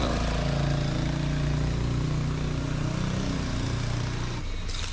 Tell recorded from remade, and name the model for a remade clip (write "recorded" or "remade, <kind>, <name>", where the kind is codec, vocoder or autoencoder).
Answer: recorded